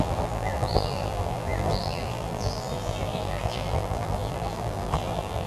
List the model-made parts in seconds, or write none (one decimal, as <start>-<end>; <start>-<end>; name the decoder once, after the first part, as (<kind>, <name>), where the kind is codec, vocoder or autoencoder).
0.0-5.5 (vocoder, BigVGAN v2)